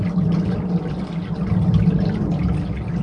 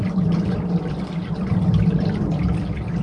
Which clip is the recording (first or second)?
first